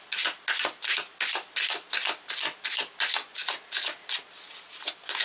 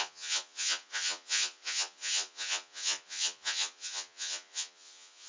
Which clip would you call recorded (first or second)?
first